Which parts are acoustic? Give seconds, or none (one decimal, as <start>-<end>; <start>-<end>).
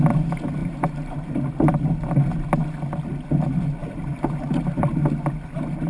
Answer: 0.0-0.6; 1.5-3.8; 4.6-5.9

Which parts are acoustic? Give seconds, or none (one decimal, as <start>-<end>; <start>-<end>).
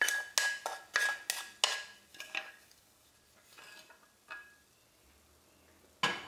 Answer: 0.0-2.1; 3.1-6.3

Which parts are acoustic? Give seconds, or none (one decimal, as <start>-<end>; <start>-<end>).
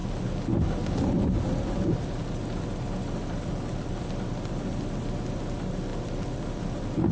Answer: 0.0-7.1